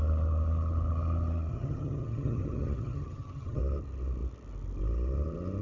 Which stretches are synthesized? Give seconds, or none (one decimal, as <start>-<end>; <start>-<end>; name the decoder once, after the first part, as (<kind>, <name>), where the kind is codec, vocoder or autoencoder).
1.5-3.6 (vocoder, HiFi-GAN)